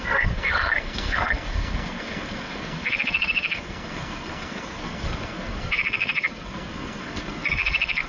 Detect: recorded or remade remade